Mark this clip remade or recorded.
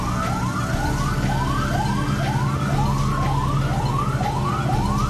recorded